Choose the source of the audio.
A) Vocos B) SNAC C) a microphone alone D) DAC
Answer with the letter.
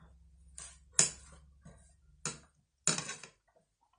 C